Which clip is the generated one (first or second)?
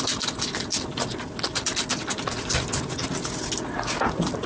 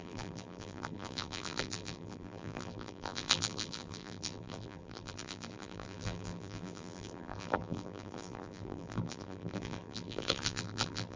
second